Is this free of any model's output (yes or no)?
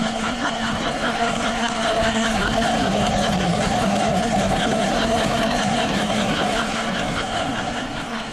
no